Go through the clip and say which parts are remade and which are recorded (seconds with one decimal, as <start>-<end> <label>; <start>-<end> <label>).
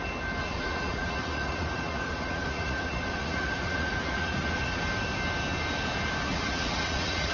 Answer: 0.0-0.4 recorded; 0.4-4.8 remade; 4.8-6.3 recorded; 6.3-7.3 remade